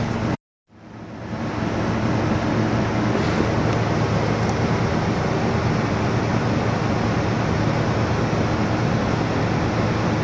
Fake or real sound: real